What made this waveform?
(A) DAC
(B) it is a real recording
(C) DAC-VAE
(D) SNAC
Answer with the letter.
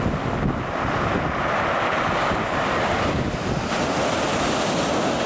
B